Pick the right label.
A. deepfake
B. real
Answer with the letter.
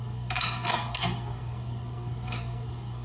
A